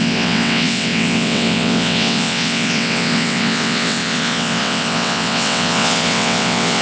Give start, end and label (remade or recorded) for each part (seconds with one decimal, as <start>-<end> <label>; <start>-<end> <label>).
0.0-6.8 remade